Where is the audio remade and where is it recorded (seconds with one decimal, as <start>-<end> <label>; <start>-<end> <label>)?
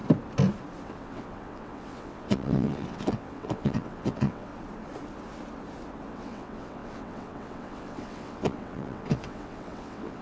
0.0-0.8 recorded; 0.8-4.5 remade; 4.5-6.1 recorded; 6.1-10.2 remade